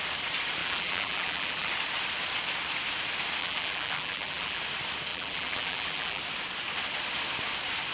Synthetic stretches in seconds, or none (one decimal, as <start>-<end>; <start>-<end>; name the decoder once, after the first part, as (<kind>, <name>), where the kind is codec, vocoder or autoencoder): 0.6-1.7 (vocoder, BigVGAN v2); 3.4-4.6; 5.1-6.2